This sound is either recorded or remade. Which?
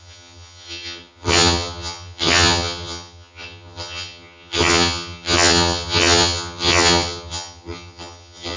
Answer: remade